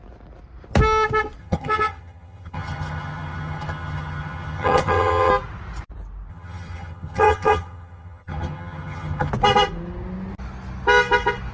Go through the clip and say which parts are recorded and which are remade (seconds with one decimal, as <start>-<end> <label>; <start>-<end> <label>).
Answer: 0.0-1.4 recorded; 1.4-5.3 remade; 5.3-6.3 recorded; 6.3-9.3 remade; 9.3-11.5 recorded